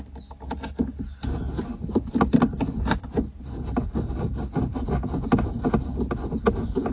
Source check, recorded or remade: recorded